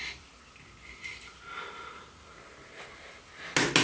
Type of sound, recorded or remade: recorded